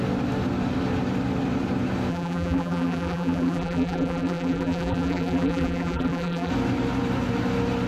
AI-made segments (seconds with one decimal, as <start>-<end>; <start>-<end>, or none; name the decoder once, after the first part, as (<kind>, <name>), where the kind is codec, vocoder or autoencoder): 2.1-6.5 (vocoder, BigVGAN v2)